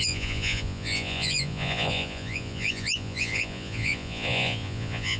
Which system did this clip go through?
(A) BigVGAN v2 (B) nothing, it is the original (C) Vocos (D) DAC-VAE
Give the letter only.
C